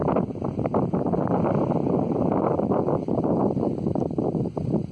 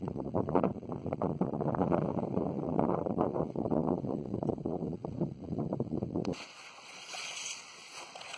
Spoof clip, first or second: second